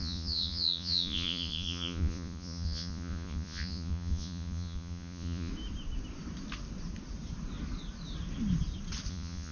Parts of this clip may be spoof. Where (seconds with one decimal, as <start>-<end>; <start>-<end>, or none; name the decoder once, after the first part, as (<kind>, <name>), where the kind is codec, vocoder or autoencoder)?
0.0-5.5 (vocoder, Vocos); 9.1-9.5